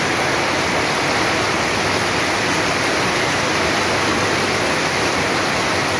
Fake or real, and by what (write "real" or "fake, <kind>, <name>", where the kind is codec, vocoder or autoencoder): real